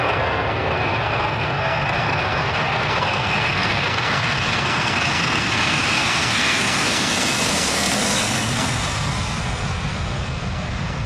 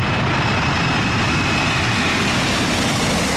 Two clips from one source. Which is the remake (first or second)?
first